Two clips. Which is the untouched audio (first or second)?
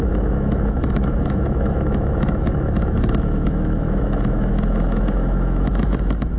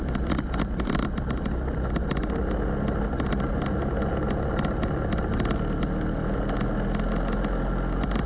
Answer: second